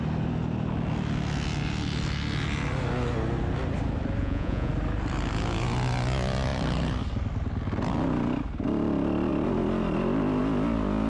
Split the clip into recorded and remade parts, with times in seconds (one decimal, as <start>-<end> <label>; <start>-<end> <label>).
0.0-4.2 recorded; 4.2-4.7 remade; 4.7-11.1 recorded